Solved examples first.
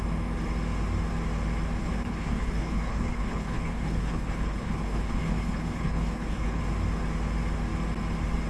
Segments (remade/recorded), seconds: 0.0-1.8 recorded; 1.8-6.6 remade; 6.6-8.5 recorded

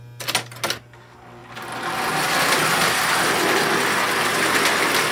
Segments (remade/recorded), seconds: 0.0-5.1 recorded

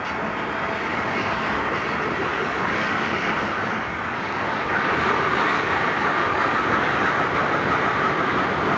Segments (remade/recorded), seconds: 0.0-0.9 recorded; 0.9-1.6 remade; 1.6-2.3 recorded; 2.3-7.1 remade; 7.1-8.8 recorded

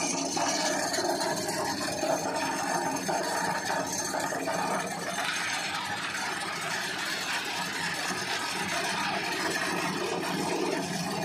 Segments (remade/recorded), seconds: 0.0-5.6 recorded; 5.6-7.0 remade; 7.0-11.2 recorded

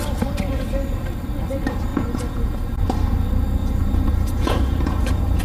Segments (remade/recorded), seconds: 0.0-1.9 recorded; 1.9-2.8 remade; 2.8-3.6 recorded; 3.6-5.4 remade

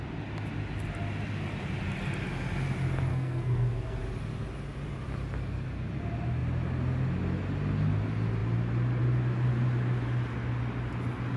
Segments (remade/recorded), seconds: 0.0-3.1 recorded; 3.1-4.0 remade; 4.0-11.4 recorded

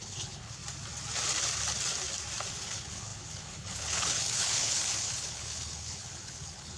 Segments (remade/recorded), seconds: 0.0-0.6 remade; 0.6-2.5 recorded; 2.5-6.8 remade